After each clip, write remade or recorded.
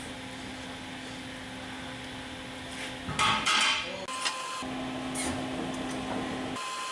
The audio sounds recorded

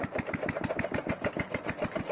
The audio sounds recorded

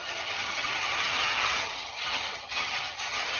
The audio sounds remade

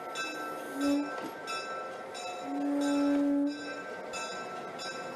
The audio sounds recorded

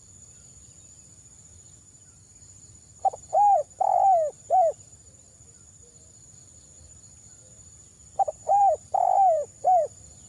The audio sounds remade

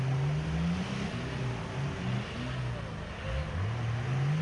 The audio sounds recorded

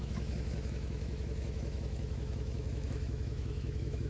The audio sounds remade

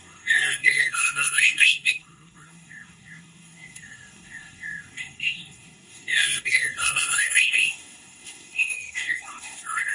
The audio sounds remade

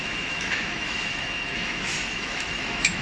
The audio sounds remade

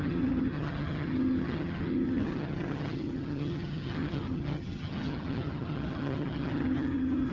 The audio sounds remade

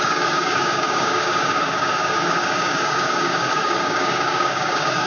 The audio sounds remade